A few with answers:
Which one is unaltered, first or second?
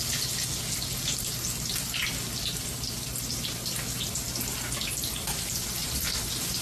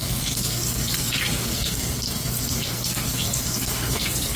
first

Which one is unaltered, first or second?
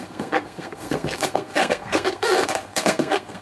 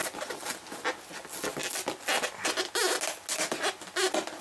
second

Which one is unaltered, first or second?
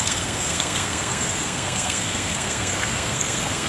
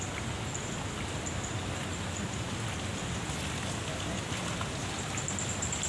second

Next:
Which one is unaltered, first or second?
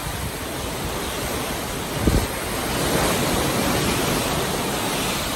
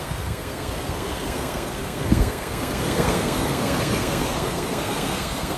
first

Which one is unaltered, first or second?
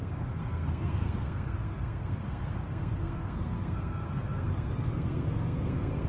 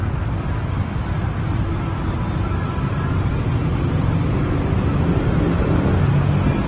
second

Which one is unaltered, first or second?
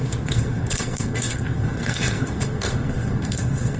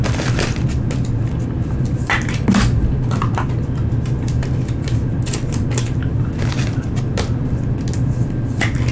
second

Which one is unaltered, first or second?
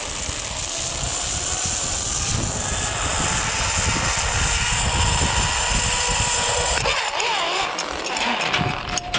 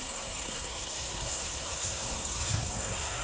first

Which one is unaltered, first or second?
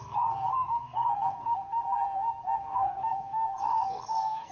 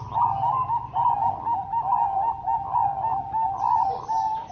second